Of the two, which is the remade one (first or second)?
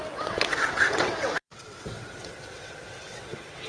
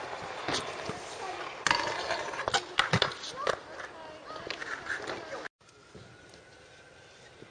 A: first